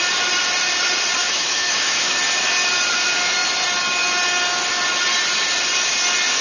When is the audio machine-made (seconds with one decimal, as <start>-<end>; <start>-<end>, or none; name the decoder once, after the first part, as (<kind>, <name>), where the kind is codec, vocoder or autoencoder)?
1.2-2.2 (autoencoder, DAC-VAE)

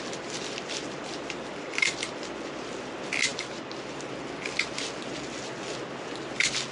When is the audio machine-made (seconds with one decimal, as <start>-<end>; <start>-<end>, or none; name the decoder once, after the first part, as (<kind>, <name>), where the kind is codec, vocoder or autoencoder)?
none

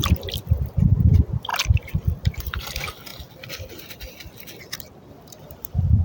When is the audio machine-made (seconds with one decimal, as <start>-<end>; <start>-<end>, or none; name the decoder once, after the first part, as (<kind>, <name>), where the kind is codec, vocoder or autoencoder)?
1.5-2.6 (vocoder, BigVGAN v2); 3.1-3.9

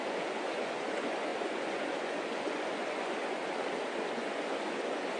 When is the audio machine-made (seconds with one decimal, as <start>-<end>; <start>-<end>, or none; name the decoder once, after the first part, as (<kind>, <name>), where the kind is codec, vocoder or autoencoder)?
0.0-3.4 (vocoder, Vocos); 4.0-5.2

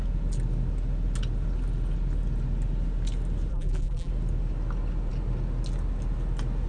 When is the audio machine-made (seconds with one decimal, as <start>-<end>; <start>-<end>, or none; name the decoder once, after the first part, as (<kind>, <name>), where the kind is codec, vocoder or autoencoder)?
3.5-4.1 (vocoder, BigVGAN v2)

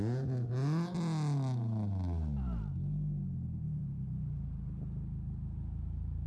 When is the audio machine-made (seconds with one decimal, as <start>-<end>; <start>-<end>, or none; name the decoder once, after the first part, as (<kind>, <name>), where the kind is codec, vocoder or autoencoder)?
none